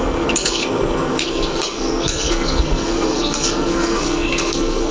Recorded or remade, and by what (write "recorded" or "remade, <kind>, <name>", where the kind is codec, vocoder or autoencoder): remade, codec, SNAC